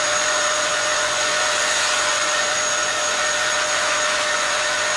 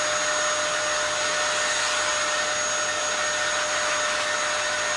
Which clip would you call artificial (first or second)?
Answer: first